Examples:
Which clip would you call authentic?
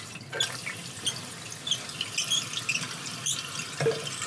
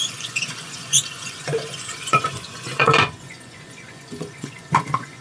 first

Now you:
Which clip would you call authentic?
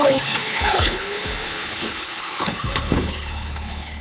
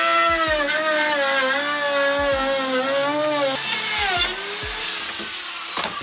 second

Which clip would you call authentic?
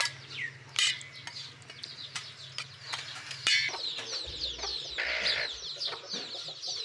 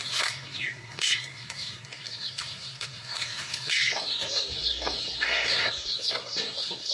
first